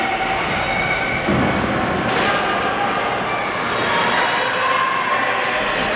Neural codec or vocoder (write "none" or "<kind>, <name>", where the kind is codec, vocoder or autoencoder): none